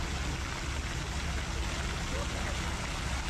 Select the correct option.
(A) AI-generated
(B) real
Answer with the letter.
B